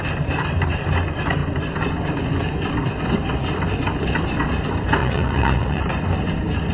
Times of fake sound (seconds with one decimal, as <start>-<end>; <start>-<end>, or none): 5.0-5.8